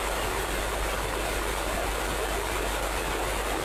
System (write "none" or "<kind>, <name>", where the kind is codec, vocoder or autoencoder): none